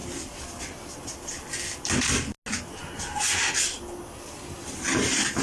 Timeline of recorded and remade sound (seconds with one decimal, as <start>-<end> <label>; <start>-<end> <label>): 0.0-5.4 recorded